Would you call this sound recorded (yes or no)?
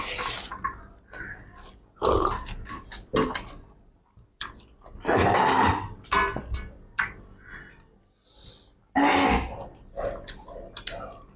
yes